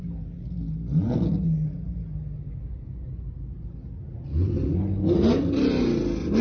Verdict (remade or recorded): recorded